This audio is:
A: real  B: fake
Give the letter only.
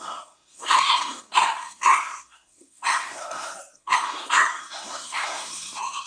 B